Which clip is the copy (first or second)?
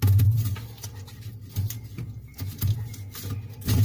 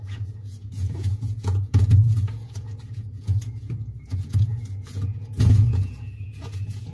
second